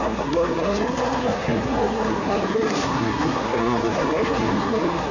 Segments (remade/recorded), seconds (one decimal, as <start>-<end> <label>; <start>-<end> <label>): 0.0-5.1 remade